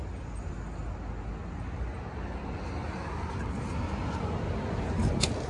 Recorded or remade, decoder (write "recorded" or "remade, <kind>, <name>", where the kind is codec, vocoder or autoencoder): recorded